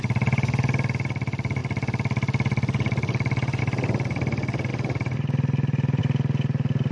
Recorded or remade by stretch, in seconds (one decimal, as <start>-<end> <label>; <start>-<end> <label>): 0.0-6.9 recorded